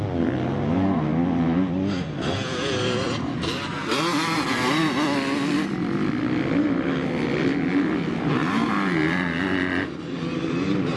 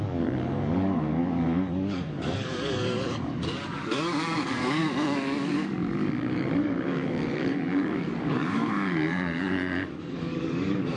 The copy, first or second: second